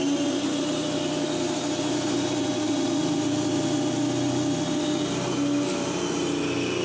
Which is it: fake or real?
real